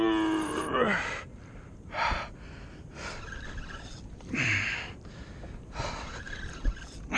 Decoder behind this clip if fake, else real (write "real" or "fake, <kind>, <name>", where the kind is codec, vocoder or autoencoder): real